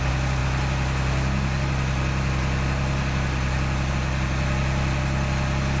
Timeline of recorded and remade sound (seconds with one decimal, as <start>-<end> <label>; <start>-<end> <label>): 0.0-5.8 recorded